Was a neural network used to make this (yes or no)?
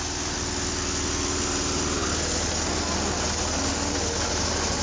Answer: no